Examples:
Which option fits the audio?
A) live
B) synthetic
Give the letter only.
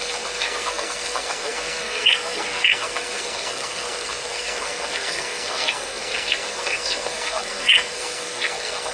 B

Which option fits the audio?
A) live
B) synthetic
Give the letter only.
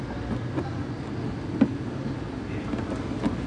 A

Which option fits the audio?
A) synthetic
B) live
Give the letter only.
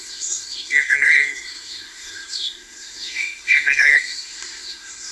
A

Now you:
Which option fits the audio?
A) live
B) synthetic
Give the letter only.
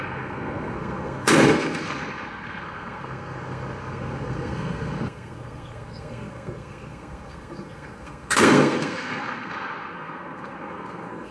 B